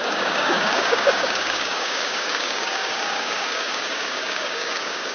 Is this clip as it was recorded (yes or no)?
no